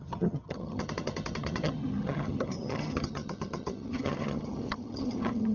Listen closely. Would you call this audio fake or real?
fake